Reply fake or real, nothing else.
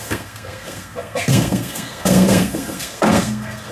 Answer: fake